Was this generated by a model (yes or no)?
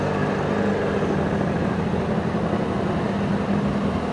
no